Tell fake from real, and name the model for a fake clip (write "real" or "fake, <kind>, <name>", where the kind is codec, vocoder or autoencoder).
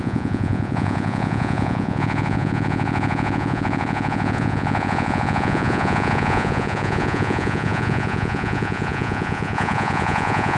fake, vocoder, Vocos